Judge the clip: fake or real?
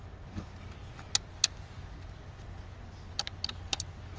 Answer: real